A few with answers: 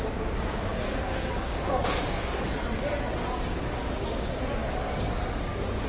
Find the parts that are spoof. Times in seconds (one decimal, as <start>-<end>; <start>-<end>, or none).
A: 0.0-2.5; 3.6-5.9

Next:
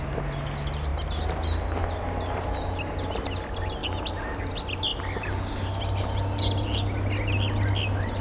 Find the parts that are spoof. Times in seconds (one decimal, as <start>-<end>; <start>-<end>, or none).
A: none

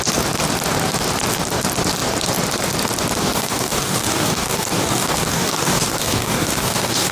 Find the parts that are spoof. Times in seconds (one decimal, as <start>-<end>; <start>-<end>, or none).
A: 3.2-7.1

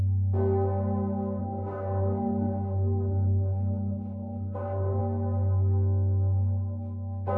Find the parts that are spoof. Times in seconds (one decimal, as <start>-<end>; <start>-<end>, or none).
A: 1.4-5.0

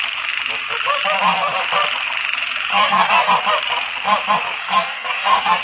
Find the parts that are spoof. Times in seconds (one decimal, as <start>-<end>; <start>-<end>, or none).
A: 2.7-3.3; 4.6-5.6

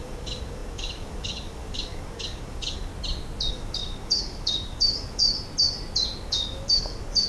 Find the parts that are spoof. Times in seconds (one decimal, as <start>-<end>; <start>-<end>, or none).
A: 0.0-2.9; 3.5-5.2; 6.3-7.3

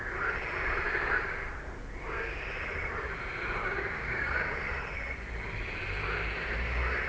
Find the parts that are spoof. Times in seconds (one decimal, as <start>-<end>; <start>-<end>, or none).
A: 3.6-4.6